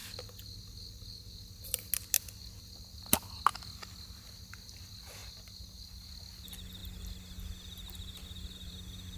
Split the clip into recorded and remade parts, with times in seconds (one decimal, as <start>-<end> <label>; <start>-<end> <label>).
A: 0.0-9.2 recorded